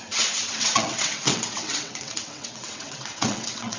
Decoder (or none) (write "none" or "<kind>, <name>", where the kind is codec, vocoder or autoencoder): vocoder, WaveNeXt